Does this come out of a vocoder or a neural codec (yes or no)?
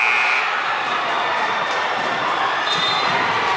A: yes